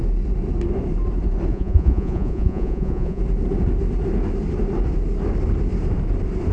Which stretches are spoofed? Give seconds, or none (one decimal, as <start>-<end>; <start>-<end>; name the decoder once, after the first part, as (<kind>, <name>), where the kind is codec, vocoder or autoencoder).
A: 1.5-3.2 (vocoder, Vocos)